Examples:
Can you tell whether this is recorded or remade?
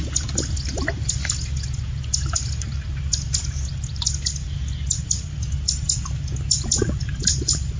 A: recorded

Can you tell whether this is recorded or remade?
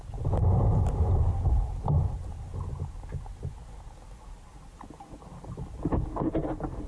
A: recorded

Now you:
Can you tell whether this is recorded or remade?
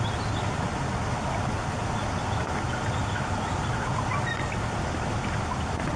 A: recorded